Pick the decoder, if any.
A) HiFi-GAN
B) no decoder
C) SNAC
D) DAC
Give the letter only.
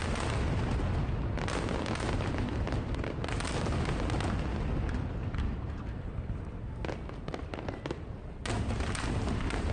B